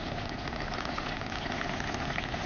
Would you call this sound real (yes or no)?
yes